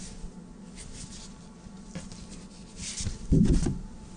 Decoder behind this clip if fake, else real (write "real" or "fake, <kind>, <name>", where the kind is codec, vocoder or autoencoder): real